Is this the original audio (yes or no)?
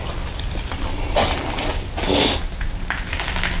yes